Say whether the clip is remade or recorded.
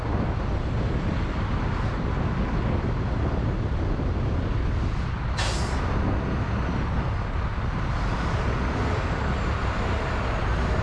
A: recorded